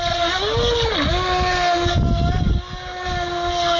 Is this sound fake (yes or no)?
no